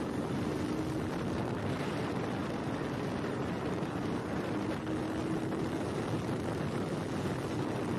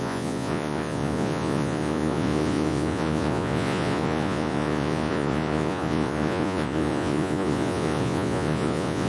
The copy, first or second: second